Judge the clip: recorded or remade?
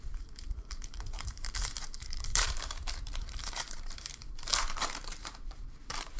remade